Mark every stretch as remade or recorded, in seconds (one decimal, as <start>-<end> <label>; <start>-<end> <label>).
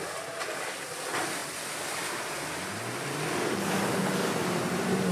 0.0-5.1 recorded